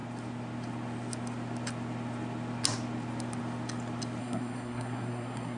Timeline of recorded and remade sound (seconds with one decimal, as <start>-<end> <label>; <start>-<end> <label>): 0.0-4.2 recorded; 4.2-5.6 remade